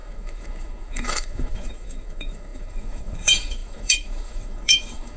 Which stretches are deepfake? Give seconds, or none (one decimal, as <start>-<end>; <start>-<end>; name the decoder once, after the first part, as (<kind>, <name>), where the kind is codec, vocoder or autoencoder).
0.0-5.2 (autoencoder, DAC-VAE)

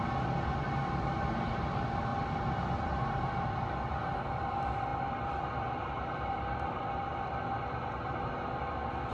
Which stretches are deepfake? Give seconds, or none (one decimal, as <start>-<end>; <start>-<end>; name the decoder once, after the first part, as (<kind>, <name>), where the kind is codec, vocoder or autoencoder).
2.1-3.0 (vocoder, BigVGAN v2); 4.9-7.5

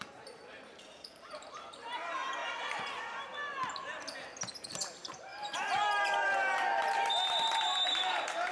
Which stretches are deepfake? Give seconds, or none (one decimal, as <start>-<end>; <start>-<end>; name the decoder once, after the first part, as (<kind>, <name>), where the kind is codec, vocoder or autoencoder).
0.0-3.3 (vocoder, BigVGAN v2); 4.6-8.5

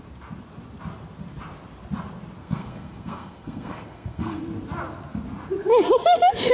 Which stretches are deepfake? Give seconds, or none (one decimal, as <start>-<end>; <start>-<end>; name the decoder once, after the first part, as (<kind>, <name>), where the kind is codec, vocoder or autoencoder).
2.4-4.4 (codec, SNAC)

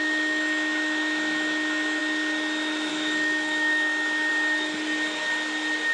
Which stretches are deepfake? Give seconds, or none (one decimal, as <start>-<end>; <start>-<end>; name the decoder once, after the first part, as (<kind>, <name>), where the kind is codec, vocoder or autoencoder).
0.0-2.0 (autoencoder, DAC-VAE); 2.9-4.3

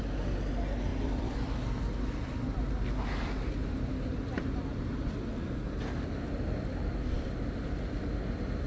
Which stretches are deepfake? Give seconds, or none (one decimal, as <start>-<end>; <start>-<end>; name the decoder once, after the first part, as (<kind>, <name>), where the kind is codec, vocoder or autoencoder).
0.9-1.7 (vocoder, BigVGAN v2)

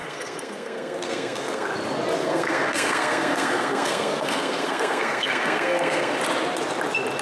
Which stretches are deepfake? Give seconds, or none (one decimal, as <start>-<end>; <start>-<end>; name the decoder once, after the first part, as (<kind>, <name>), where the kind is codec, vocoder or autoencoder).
0.0-1.7 (codec, SNAC); 2.2-6.2

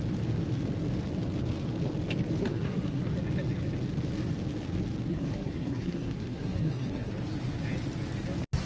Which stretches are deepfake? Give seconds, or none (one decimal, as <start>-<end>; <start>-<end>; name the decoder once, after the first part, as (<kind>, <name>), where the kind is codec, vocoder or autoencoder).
2.5-3.0 (codec, SNAC); 5.1-7.1